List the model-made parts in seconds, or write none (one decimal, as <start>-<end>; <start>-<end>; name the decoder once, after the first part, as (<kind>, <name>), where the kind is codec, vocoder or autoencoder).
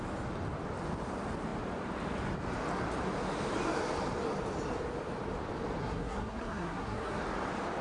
5.8-7.2 (codec, SNAC)